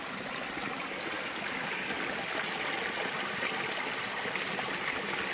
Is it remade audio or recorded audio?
recorded